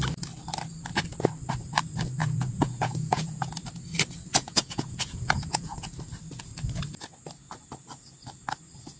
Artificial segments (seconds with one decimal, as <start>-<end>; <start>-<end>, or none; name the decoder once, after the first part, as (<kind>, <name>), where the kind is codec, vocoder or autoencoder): 2.2-3.5 (vocoder, Vocos); 4.3-5.9